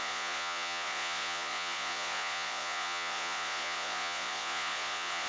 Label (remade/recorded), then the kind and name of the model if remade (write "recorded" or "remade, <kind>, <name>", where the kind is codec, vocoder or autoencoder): remade, vocoder, Vocos